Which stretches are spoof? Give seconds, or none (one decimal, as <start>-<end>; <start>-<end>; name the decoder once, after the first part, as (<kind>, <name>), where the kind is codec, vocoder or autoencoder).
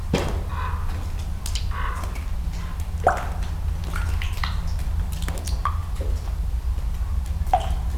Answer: none